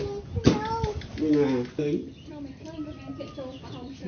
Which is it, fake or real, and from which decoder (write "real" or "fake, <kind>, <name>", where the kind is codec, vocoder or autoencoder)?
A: real